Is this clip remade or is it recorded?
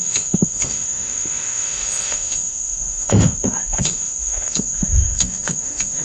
remade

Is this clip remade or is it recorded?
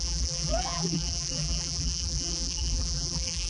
remade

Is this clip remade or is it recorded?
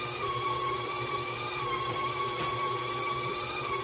recorded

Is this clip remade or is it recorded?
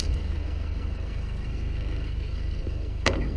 remade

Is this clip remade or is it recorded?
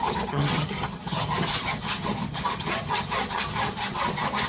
remade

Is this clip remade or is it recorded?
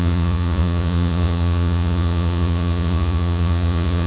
remade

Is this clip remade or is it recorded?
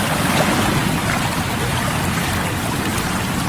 recorded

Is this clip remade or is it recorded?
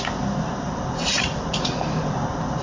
recorded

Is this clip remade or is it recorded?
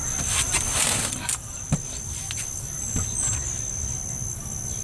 recorded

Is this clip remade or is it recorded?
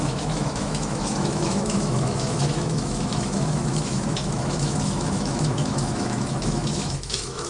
remade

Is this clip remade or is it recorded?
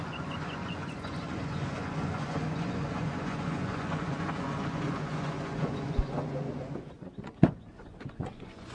remade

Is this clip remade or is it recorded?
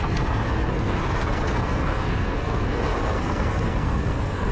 remade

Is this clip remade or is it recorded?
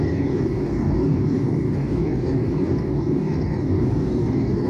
remade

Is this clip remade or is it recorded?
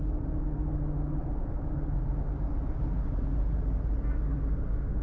recorded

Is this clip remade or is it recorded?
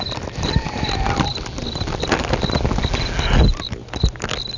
recorded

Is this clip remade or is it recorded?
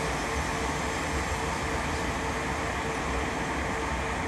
recorded